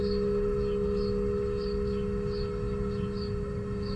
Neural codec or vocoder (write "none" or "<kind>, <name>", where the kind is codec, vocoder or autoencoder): autoencoder, DAC-VAE